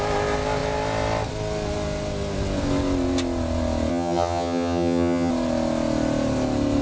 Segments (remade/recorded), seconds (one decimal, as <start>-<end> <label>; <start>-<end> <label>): 0.0-3.9 recorded; 3.9-5.3 remade; 5.3-6.8 recorded